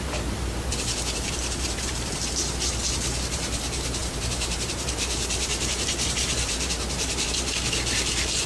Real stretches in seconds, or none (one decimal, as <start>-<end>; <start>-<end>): none